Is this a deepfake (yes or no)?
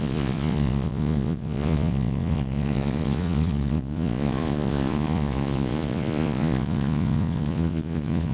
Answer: yes